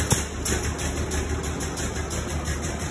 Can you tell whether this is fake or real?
real